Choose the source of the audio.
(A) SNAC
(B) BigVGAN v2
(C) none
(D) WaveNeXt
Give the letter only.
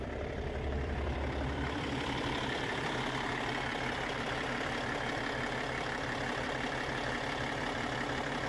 B